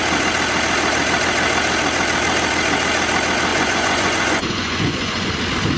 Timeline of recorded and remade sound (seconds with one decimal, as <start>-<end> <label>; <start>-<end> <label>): 0.0-3.5 recorded; 3.5-5.3 remade; 5.3-5.8 recorded